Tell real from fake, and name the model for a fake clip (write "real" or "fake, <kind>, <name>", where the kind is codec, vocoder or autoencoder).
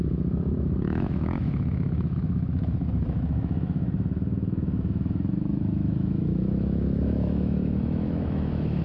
fake, autoencoder, DAC-VAE